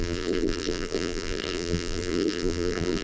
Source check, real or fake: fake